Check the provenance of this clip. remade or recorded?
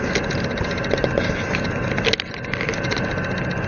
recorded